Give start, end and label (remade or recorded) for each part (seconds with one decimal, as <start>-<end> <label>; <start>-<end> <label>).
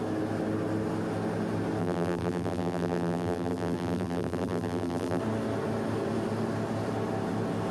0.0-1.8 recorded; 1.8-5.2 remade; 5.2-7.7 recorded